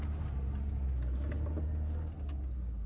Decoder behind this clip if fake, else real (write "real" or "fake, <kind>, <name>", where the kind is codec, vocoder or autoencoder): real